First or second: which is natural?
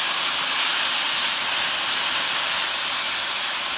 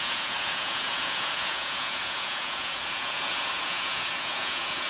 first